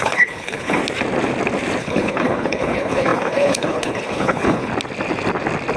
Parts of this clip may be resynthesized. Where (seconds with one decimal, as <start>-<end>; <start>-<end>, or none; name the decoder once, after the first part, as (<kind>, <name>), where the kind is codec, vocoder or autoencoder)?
0.0-0.8 (codec, HILCodec); 1.8-4.7